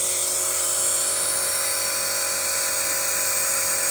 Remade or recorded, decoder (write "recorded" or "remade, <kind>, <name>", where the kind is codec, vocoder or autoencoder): recorded